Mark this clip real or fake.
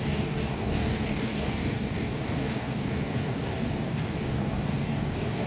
fake